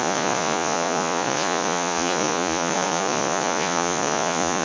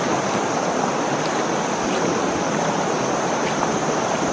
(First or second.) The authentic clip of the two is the second